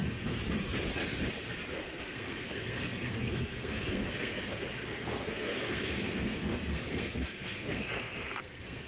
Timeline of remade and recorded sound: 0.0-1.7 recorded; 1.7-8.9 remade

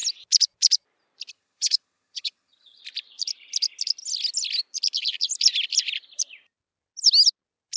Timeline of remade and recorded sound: 0.0-1.3 recorded; 1.3-2.8 remade; 2.8-7.8 recorded

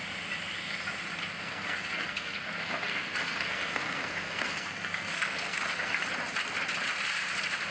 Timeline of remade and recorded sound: 0.0-1.4 recorded; 1.4-6.0 remade; 6.0-7.7 recorded

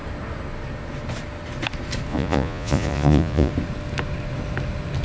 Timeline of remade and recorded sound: 0.0-2.1 recorded; 2.1-3.5 remade; 3.5-5.0 recorded

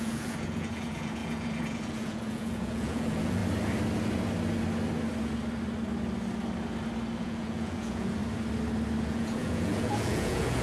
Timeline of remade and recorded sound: 0.0-3.4 remade; 3.4-7.2 recorded; 7.2-8.2 remade; 8.2-9.0 recorded; 9.0-10.6 remade